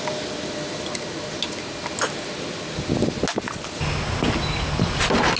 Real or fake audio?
real